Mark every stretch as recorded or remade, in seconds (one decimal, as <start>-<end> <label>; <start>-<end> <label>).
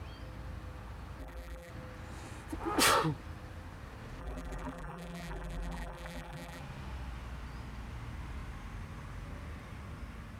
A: 0.0-1.2 recorded; 1.2-1.7 remade; 1.7-4.2 recorded; 4.2-6.6 remade; 6.6-10.4 recorded